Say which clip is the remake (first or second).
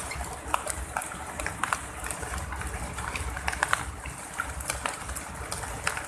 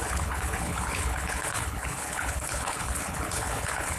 second